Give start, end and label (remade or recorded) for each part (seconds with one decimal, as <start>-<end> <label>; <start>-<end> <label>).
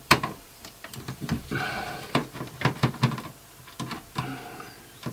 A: 0.0-2.2 remade; 2.2-5.1 recorded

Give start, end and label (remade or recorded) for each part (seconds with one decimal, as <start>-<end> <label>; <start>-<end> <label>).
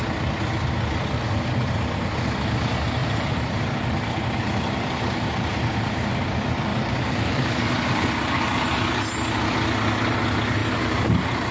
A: 0.0-3.0 recorded; 3.0-6.1 remade; 6.1-6.7 recorded; 6.7-8.1 remade; 8.1-10.6 recorded; 10.6-11.5 remade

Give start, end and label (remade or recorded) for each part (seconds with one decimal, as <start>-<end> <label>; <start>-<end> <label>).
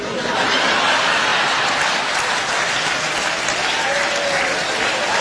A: 0.0-5.2 recorded